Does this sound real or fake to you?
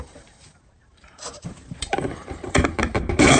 fake